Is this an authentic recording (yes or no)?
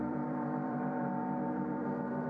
no